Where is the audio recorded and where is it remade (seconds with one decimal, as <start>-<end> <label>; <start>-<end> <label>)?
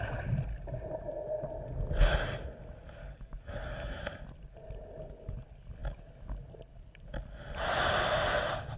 0.0-3.0 recorded; 3.0-4.0 remade; 4.0-8.8 recorded